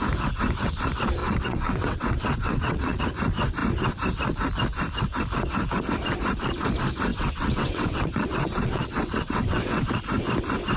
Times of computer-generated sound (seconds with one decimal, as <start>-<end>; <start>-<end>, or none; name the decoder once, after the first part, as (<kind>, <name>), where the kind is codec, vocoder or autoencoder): 1.2-3.0 (vocoder, WaveNeXt); 7.1-10.0